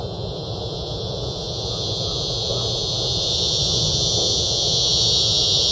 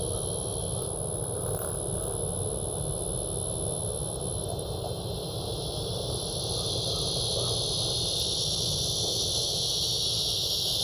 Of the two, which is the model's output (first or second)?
first